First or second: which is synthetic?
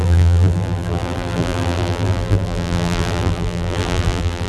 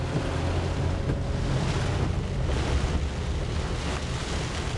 first